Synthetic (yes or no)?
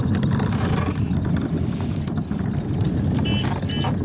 no